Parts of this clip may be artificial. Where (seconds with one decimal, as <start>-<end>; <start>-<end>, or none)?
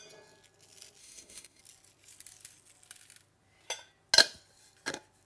1.0-1.6